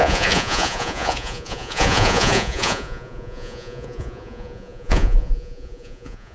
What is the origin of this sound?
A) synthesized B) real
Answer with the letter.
A